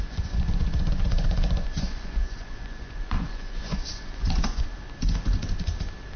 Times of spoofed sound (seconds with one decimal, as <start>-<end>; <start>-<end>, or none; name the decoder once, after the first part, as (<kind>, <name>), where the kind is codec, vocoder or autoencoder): 0.0-4.7 (vocoder, Vocos)